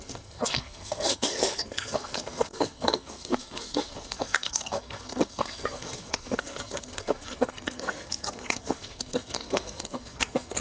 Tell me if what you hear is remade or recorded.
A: remade